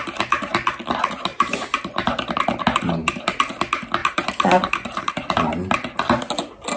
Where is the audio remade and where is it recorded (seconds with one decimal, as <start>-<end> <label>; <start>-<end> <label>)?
0.0-1.3 recorded; 1.3-2.4 remade; 2.4-4.0 recorded; 4.0-5.1 remade; 5.1-6.8 recorded